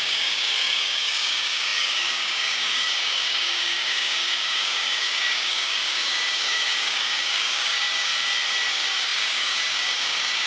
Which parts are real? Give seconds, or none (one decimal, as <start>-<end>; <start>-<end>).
8.1-8.7